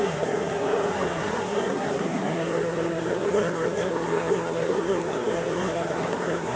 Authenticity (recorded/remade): remade